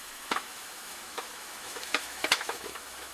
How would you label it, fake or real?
fake